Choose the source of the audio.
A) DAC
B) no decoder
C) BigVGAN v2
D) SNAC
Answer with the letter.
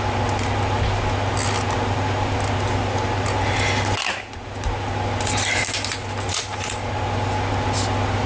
B